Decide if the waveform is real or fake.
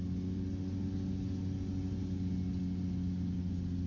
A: real